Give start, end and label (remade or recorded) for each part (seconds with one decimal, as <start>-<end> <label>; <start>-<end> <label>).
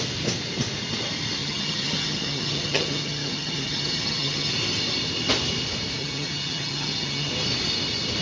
0.0-1.4 recorded; 1.4-4.5 remade; 4.5-6.0 recorded; 6.0-7.3 remade; 7.3-8.2 recorded